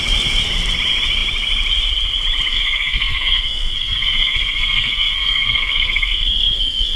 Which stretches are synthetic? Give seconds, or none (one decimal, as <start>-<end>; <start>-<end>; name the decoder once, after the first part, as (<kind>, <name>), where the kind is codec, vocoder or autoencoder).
2.5-7.0 (codec, SNAC)